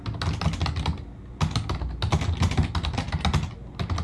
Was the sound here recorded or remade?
recorded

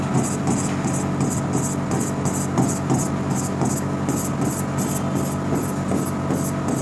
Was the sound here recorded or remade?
recorded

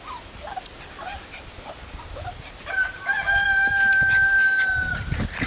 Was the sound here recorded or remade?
recorded